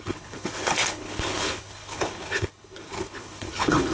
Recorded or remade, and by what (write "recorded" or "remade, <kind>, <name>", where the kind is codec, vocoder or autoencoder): remade, codec, HILCodec